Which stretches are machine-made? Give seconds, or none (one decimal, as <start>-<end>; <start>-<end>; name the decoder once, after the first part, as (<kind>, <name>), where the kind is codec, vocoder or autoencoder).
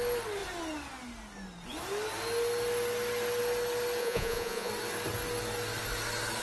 4.0-4.7 (vocoder, Vocos)